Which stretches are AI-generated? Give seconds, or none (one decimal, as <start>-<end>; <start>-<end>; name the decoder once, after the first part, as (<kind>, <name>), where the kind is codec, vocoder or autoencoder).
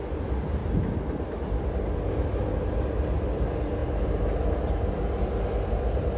none